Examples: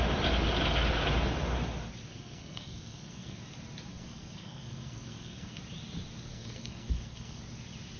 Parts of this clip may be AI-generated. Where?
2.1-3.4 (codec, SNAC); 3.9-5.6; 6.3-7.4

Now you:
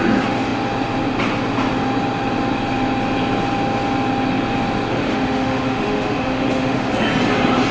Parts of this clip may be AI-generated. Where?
4.9-6.9 (autoencoder, DAC-VAE)